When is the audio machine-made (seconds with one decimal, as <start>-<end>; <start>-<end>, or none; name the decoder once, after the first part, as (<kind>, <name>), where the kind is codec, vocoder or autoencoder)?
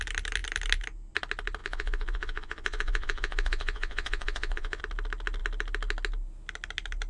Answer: 1.6-4.8 (vocoder, Vocos)